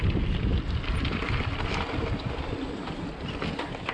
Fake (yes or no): no